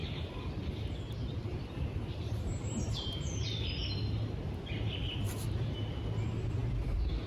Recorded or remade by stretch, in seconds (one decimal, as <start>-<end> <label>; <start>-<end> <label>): 0.0-0.9 remade; 0.9-1.5 recorded; 1.5-3.4 remade; 3.4-7.3 recorded